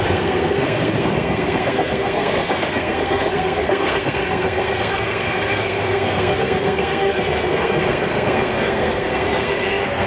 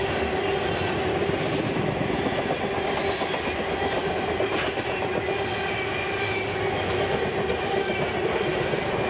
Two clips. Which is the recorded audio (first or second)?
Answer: second